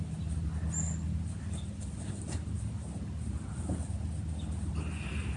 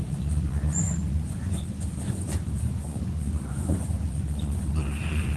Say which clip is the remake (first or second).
second